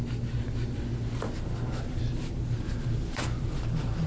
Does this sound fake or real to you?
real